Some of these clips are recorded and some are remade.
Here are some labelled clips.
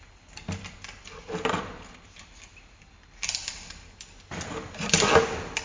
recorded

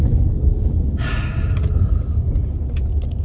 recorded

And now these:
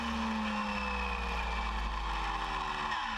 recorded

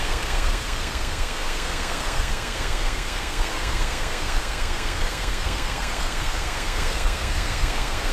remade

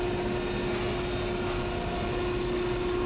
recorded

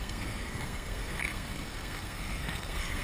remade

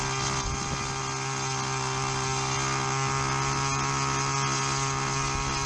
recorded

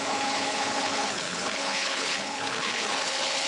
remade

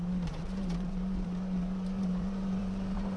remade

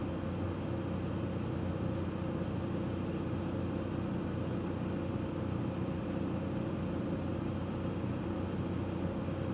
recorded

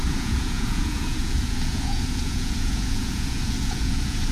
remade